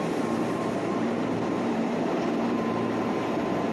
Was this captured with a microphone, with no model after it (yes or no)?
no